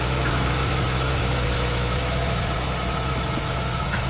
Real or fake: fake